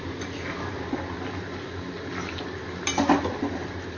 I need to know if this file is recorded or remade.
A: recorded